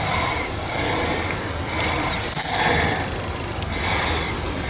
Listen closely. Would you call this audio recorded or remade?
recorded